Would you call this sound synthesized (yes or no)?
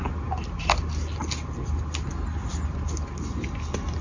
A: no